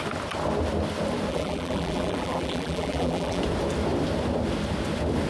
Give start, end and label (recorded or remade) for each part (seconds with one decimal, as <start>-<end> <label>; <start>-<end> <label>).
0.0-1.3 recorded; 1.3-3.4 remade; 3.4-5.3 recorded

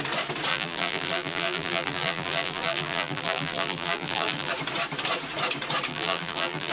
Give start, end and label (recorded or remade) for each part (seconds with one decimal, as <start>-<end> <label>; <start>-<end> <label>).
0.0-0.5 recorded; 0.5-4.5 remade; 4.5-5.9 recorded; 5.9-6.7 remade

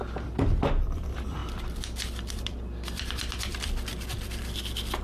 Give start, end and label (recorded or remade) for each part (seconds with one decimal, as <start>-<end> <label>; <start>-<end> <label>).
0.0-1.4 remade; 1.4-2.3 recorded; 2.3-5.0 remade